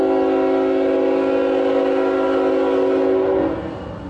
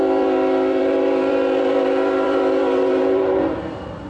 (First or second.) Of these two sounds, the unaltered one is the first